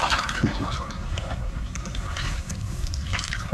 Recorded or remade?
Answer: remade